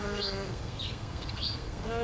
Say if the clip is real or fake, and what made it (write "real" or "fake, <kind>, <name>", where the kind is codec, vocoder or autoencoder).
fake, codec, SNAC